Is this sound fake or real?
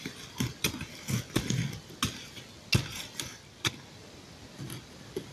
real